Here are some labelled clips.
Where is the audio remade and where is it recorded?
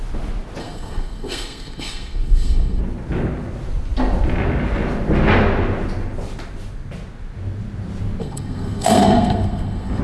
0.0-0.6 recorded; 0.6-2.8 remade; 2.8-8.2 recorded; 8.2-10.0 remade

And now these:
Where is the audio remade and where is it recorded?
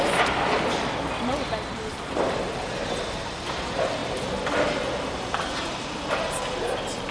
0.0-7.1 recorded